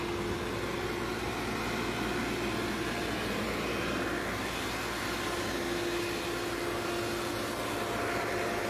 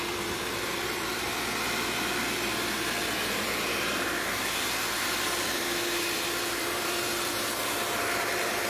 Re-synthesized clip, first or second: second